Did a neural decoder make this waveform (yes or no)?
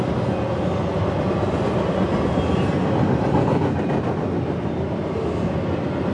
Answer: no